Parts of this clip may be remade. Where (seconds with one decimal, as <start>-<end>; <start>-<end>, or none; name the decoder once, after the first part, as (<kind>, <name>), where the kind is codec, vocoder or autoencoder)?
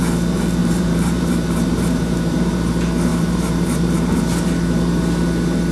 0.6-2.7 (vocoder, BigVGAN v2); 3.1-4.2